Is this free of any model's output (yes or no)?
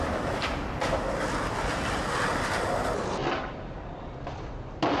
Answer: yes